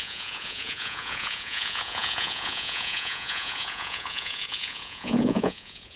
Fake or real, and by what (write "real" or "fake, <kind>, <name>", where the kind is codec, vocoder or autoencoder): fake, vocoder, Vocos